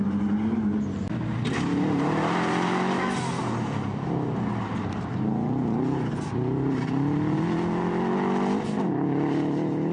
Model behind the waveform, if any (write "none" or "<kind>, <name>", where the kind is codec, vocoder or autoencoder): none